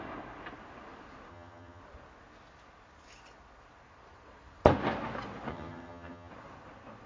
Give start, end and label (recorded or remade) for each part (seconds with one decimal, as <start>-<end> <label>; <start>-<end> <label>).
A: 0.0-1.3 recorded; 1.3-1.8 remade; 1.8-5.5 recorded; 5.5-6.3 remade; 6.3-7.1 recorded